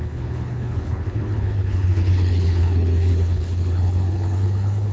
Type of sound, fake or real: fake